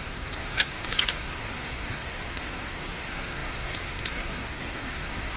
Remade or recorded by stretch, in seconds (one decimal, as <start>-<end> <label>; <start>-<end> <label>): 0.0-5.4 remade